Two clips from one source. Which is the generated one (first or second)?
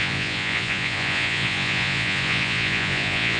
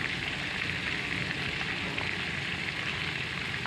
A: first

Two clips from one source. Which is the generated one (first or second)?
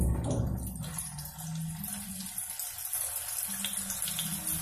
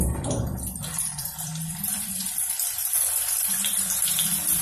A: second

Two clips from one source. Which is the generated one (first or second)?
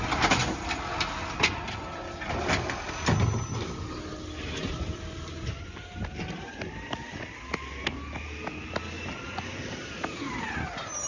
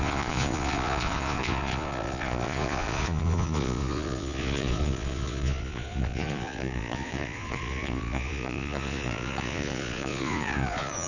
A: second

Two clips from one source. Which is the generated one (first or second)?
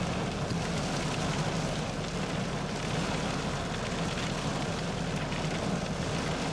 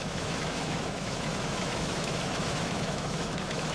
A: second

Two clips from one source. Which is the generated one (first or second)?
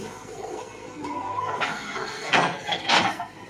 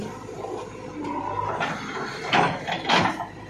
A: first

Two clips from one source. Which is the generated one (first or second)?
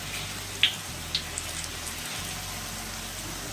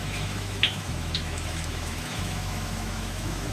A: second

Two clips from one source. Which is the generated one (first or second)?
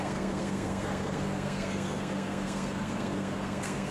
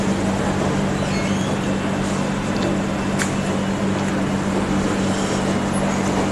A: first